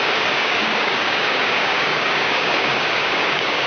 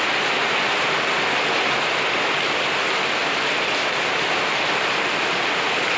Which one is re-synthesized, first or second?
first